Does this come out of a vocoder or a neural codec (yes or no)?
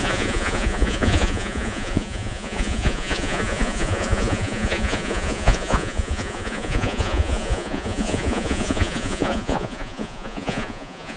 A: yes